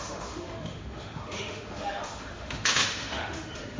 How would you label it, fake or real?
fake